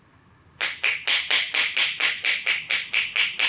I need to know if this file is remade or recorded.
recorded